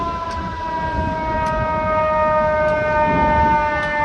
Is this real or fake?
real